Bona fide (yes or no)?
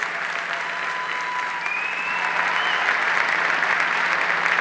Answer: yes